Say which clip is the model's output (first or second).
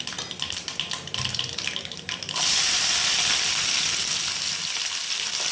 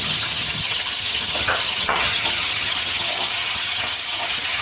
second